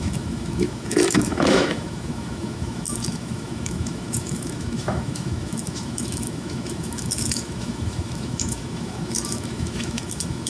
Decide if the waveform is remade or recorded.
remade